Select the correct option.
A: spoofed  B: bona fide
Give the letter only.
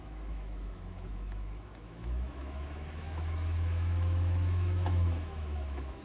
A